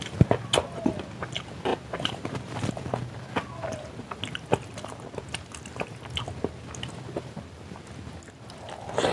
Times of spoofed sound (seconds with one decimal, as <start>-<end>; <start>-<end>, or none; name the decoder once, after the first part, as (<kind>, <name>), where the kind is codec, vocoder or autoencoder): 1.7-3.1 (vocoder, BigVGAN v2)